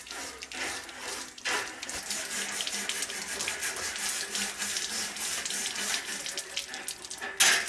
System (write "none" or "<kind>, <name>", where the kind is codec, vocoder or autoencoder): none